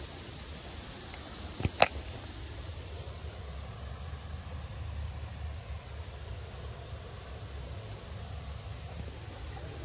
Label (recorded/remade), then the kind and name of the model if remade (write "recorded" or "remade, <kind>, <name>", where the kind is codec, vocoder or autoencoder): recorded